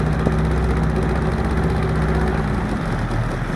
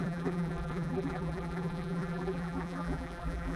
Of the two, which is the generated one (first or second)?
second